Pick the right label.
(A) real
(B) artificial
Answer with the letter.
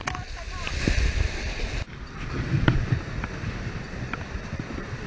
B